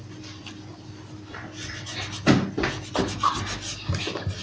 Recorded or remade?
recorded